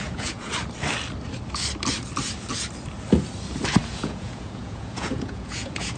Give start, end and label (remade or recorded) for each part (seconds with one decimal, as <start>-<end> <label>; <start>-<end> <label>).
0.0-0.5 remade; 0.5-3.9 recorded; 3.9-6.0 remade